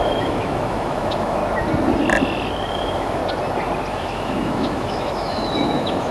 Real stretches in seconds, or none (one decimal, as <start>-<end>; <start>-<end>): 1.4-2.7; 3.2-3.9

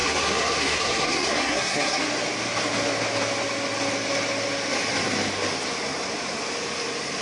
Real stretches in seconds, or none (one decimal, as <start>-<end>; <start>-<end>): 2.0-7.2

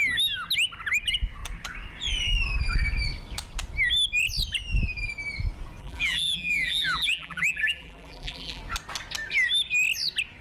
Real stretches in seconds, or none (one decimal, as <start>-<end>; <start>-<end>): 0.0-5.8; 8.6-10.4

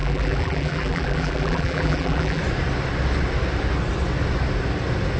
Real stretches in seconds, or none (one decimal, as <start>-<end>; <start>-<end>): 2.4-5.2

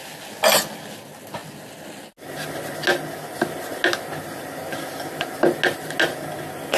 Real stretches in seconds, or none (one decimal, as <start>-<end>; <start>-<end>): 0.0-6.8